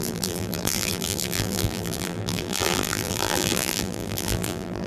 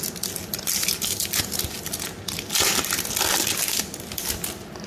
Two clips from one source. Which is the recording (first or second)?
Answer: second